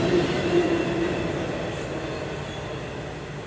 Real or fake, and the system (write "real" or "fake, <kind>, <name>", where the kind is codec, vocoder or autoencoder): real